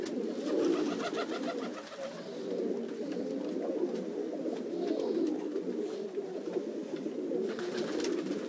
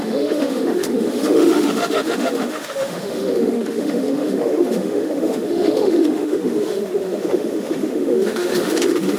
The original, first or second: first